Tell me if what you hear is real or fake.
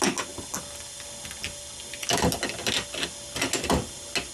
real